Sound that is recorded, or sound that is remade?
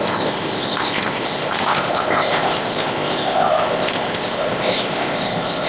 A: remade